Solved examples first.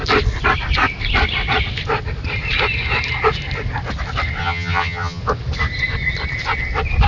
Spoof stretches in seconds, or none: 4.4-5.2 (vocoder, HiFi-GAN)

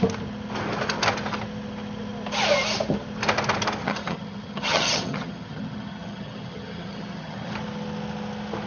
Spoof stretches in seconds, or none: 3.8-7.5 (vocoder, HiFi-GAN)

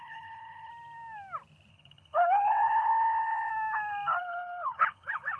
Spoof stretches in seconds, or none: 0.0-0.7 (codec, HILCodec); 1.7-3.5; 4.2-5.4